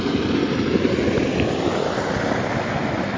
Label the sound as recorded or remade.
recorded